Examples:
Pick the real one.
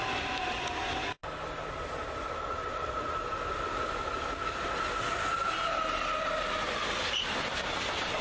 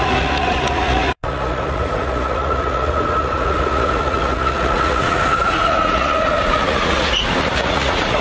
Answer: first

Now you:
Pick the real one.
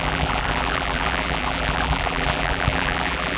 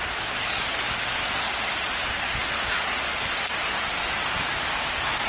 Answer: second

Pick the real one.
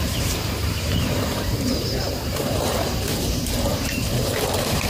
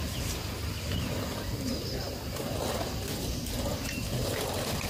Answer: second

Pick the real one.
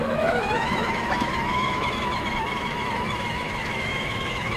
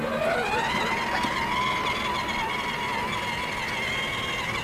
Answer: second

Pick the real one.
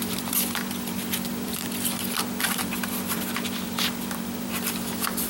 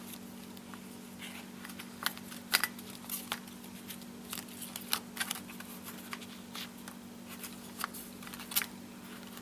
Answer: second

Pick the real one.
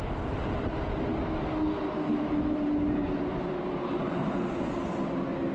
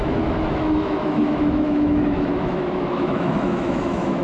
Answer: first